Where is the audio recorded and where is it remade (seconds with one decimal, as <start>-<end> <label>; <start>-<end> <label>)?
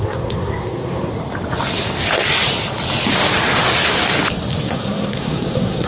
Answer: 0.0-1.1 remade; 1.1-4.6 recorded; 4.6-5.9 remade